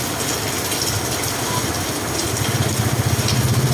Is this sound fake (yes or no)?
no